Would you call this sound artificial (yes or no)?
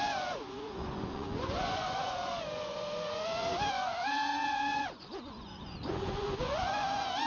yes